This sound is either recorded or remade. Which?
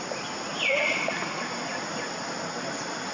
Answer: recorded